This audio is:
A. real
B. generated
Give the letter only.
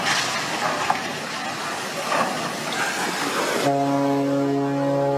A